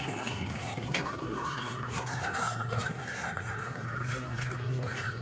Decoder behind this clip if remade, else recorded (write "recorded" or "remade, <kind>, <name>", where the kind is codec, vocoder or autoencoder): remade, codec, SNAC